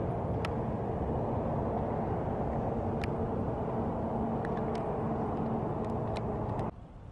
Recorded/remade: recorded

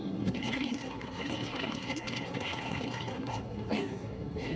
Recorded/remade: remade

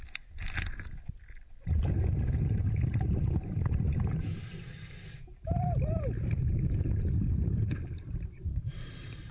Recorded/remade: recorded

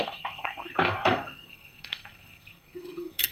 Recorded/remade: remade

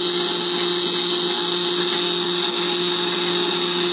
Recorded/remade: recorded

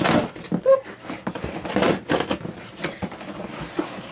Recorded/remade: recorded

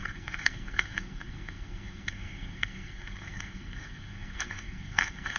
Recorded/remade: remade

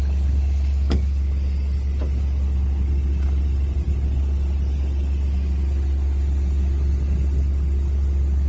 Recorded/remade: recorded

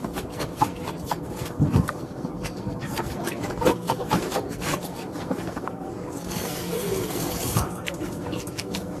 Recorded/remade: remade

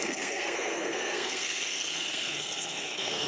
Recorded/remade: remade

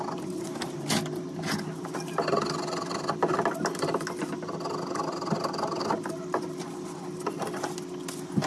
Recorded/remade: recorded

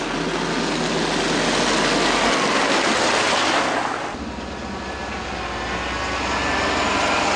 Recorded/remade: recorded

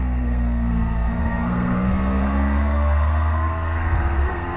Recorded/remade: remade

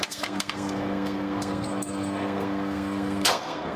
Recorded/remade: remade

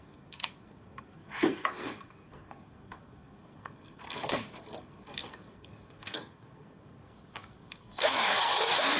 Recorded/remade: remade